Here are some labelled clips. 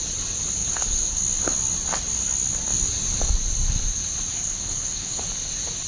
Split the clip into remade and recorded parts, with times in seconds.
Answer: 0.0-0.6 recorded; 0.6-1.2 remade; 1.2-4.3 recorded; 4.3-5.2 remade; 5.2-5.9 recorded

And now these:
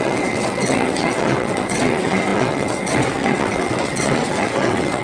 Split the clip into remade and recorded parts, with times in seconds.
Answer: 0.0-5.0 remade

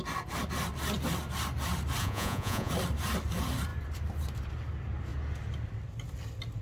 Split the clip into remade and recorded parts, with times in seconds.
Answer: 0.0-2.0 recorded; 2.0-2.7 remade; 2.7-6.6 recorded

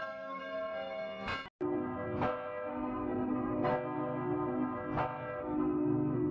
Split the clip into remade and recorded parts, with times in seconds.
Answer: 0.0-0.4 remade; 0.4-2.7 recorded; 2.7-3.7 remade; 3.7-5.4 recorded; 5.4-6.3 remade